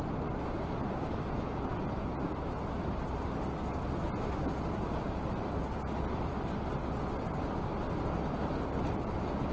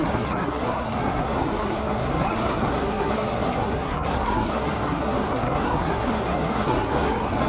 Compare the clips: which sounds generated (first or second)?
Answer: second